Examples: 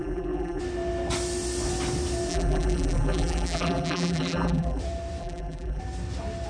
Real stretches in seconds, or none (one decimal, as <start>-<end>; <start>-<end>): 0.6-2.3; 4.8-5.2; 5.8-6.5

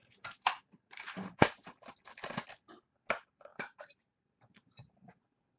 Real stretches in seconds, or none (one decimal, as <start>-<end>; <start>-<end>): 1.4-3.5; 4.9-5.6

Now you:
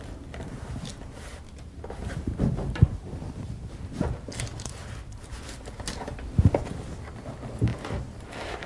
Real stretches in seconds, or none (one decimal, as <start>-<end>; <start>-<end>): 0.0-0.9; 3.5-4.5; 6.7-7.7

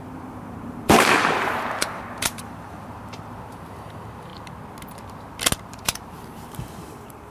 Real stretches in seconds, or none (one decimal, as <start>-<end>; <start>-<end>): 4.3-5.7

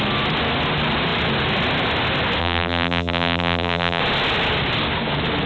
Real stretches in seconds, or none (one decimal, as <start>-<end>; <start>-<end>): 0.0-2.4; 4.0-5.5